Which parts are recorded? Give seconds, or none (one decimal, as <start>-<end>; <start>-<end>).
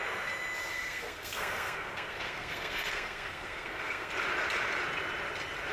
0.0-0.7; 4.1-5.7